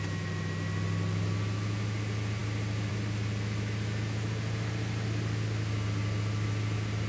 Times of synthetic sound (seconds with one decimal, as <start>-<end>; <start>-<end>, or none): none